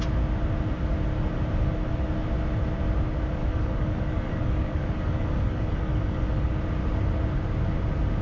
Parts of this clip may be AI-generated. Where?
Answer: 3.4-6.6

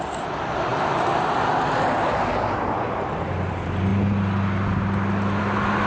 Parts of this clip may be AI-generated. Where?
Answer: none

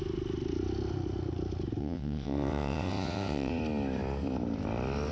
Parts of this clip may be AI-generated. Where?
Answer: 1.8-3.5